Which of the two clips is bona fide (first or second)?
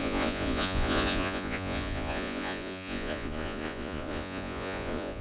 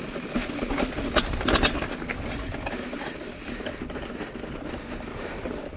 second